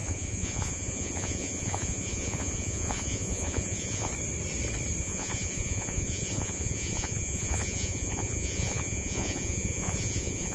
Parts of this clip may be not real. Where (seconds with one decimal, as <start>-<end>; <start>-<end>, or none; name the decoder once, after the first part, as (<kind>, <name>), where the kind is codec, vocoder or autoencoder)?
0.0-4.1 (vocoder, Vocos); 5.0-10.5

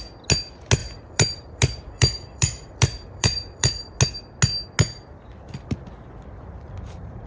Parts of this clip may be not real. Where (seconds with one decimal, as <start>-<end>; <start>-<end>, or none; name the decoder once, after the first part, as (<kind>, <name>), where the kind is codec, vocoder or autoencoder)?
0.8-4.0 (vocoder, BigVGAN v2)

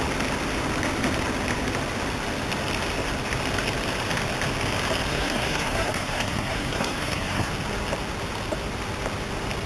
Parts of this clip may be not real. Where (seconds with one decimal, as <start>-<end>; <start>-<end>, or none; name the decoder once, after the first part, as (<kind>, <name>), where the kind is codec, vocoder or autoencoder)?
5.1-7.5 (codec, SNAC)

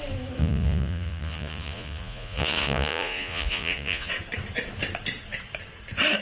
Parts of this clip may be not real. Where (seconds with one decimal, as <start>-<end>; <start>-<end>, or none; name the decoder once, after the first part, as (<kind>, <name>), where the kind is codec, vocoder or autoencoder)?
0.4-4.1 (vocoder, Vocos)

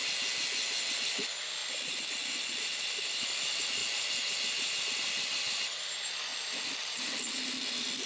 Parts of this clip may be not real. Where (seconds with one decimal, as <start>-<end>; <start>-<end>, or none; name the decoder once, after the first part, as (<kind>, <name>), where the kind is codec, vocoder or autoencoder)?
1.6-3.2 (vocoder, BigVGAN v2); 6.3-8.1

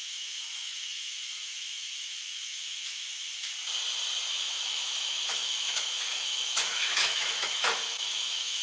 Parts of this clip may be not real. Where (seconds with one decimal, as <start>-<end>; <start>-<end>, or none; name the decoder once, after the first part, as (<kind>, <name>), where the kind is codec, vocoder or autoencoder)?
0.0-3.5 (autoencoder, DAC-VAE); 4.3-8.6

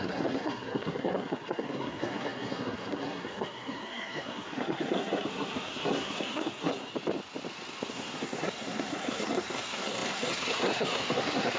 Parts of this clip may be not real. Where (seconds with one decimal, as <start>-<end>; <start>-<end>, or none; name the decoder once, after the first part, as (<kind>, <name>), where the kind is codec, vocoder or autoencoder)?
0.0-6.9 (codec, SNAC); 7.9-11.6